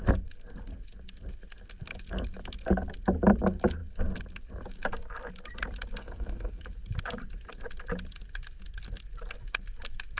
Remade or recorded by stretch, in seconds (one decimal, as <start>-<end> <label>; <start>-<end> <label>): 0.0-6.0 recorded; 6.0-6.6 remade; 6.6-10.2 recorded